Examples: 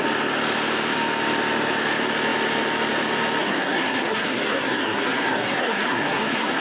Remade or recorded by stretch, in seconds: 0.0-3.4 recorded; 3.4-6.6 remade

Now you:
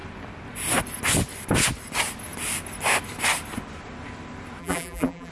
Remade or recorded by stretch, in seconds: 0.0-4.6 recorded; 4.6-5.3 remade

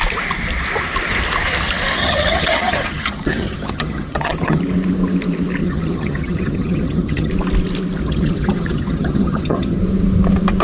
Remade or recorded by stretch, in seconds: 0.0-2.0 recorded; 2.0-4.6 remade; 4.6-5.6 recorded; 5.6-7.3 remade; 7.3-8.0 recorded; 8.0-9.8 remade; 9.8-10.6 recorded

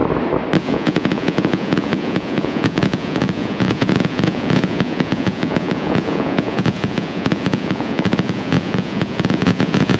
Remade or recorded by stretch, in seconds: 0.0-0.6 recorded; 0.6-10.0 remade

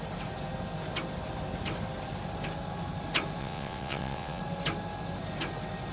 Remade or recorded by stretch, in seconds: 0.0-3.4 recorded; 3.4-4.4 remade; 4.4-5.9 recorded

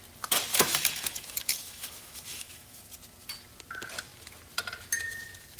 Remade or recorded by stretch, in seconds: 0.0-0.5 recorded; 0.5-2.8 remade; 2.8-5.6 recorded

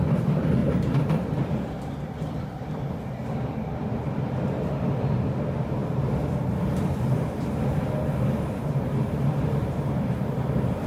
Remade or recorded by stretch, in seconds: 0.0-0.6 recorded; 0.6-1.5 remade; 1.5-10.9 recorded